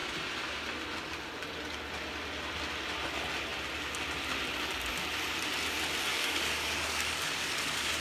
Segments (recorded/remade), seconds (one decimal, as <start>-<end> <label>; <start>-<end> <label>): 0.0-6.1 recorded; 6.1-8.0 remade